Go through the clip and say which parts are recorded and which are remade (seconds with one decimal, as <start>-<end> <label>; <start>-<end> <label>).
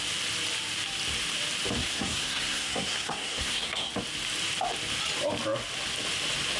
0.0-1.8 recorded; 1.8-3.9 remade; 3.9-6.6 recorded